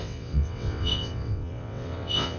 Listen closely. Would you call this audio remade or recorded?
remade